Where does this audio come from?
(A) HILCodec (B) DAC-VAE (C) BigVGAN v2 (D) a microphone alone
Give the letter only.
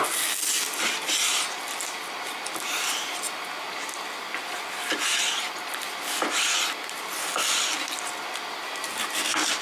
D